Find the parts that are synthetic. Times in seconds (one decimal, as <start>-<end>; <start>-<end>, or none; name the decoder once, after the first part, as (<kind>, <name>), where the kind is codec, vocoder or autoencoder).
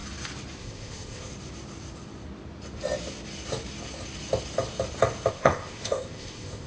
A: 0.6-1.3 (codec, ZipCodec); 5.3-6.7